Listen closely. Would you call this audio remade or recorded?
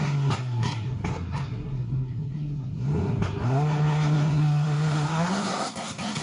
remade